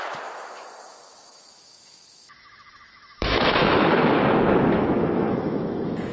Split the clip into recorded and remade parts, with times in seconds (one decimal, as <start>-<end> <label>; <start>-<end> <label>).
0.0-6.1 remade